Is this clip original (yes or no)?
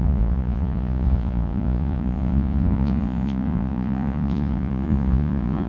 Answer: no